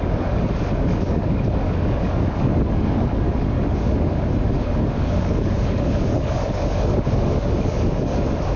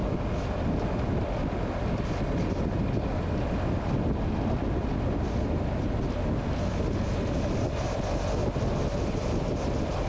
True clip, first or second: second